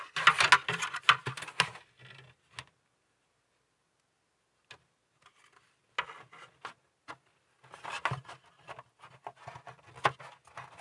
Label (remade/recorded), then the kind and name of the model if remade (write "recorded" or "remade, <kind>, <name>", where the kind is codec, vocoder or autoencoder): recorded